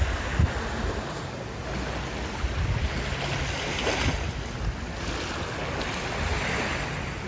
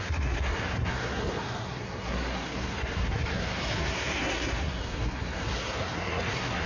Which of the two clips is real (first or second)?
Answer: first